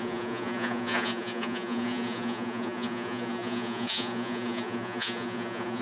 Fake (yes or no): yes